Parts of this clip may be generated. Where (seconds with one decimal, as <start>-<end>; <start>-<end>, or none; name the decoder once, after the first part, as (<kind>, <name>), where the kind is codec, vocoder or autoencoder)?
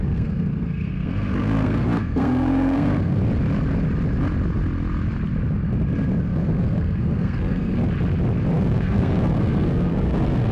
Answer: 0.0-3.2 (codec, SNAC); 6.2-7.8; 8.6-10.5